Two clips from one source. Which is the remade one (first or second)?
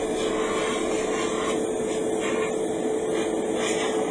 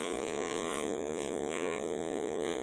second